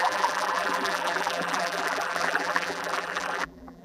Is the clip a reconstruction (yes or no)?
yes